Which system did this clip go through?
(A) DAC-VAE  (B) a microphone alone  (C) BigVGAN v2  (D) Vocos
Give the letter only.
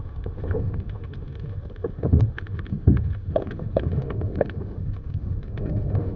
A